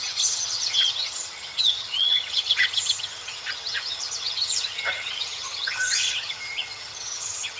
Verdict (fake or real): fake